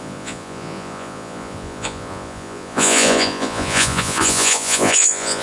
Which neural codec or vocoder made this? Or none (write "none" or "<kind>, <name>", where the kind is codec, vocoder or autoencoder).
vocoder, Vocos